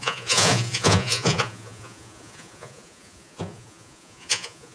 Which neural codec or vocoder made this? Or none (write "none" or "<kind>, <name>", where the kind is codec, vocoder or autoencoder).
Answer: vocoder, Vocos